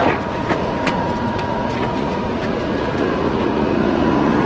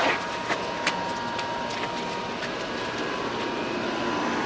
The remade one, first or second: first